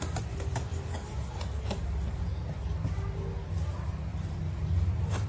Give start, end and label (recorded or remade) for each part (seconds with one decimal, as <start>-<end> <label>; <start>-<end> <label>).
0.0-4.1 recorded; 4.1-4.7 remade; 4.7-5.3 recorded